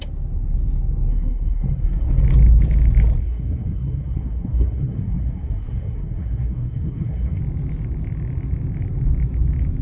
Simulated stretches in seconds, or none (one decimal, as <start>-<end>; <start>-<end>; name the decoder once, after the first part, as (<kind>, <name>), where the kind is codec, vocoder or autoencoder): 1.1-2.2 (codec, SNAC); 3.2-7.4